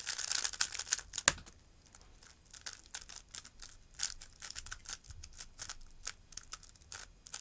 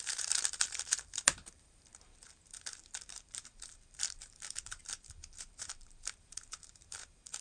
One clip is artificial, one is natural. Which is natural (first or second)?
first